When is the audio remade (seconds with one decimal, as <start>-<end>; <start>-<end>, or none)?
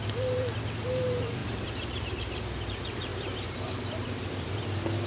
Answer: 0.0-5.1